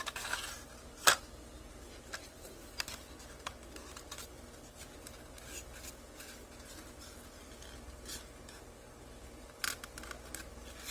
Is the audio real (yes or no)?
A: yes